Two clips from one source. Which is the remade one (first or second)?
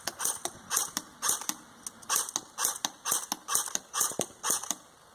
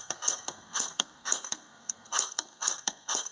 second